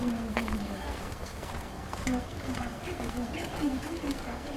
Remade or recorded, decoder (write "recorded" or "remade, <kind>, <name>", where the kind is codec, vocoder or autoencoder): remade, codec, SNAC